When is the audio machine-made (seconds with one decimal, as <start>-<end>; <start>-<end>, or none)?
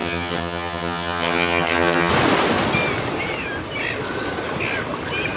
0.0-2.1